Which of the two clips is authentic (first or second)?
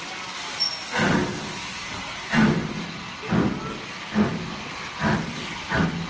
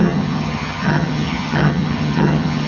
first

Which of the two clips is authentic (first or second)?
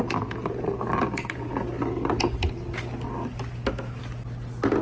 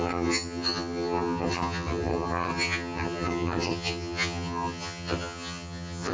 first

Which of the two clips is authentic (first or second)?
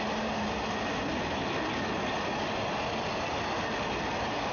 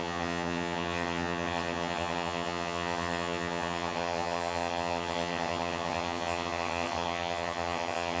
first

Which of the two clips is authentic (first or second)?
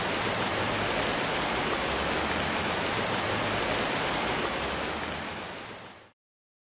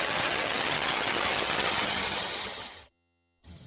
first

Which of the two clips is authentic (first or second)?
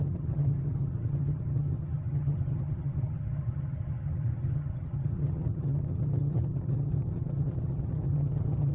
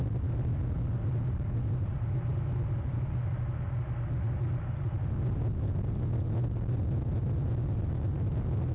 second